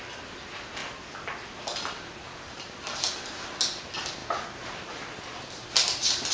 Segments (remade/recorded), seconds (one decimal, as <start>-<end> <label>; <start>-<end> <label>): 0.0-6.3 recorded